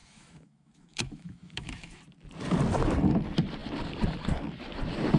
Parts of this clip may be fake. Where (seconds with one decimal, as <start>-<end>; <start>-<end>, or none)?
0.0-2.0